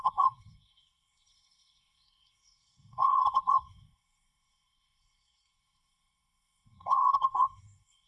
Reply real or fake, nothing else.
fake